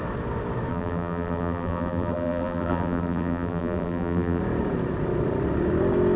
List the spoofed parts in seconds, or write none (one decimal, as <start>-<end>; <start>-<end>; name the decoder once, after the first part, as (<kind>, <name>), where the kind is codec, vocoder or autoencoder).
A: 0.7-4.4 (vocoder, BigVGAN v2)